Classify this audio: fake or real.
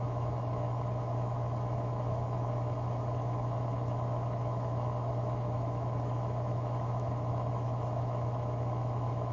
fake